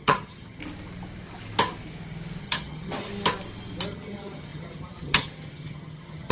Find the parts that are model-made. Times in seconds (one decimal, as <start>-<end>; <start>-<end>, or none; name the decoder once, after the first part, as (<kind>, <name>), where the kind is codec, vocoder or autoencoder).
0.0-0.6 (vocoder, HiFi-GAN); 2.4-3.1; 3.9-6.3